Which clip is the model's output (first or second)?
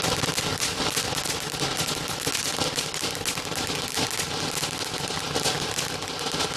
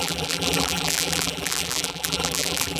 second